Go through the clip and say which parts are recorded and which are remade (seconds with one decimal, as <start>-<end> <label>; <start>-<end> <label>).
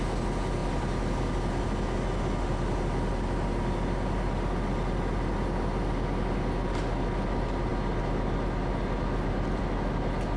0.0-10.4 recorded